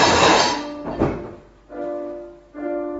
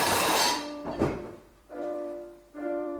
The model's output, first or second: second